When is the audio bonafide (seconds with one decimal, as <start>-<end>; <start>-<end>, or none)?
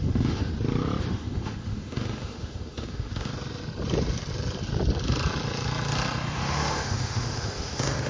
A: 0.5-1.0; 3.3-6.3